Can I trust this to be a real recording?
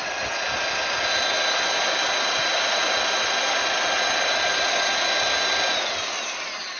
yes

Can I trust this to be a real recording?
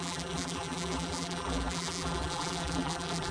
no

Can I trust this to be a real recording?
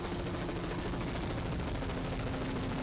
yes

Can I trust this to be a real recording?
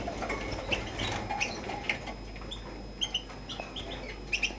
yes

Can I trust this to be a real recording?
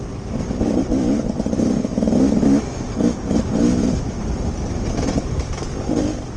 yes